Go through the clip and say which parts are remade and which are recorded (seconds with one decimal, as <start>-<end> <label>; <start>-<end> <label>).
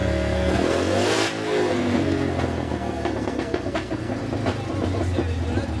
0.0-4.2 remade; 4.2-5.8 recorded